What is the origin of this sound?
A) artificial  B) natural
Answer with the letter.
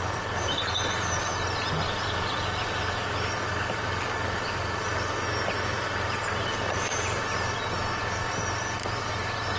B